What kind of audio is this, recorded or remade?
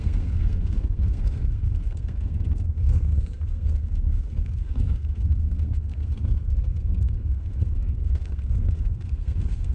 remade